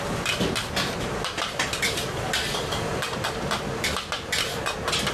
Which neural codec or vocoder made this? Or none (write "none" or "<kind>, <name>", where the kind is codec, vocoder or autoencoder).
vocoder, BigVGAN v2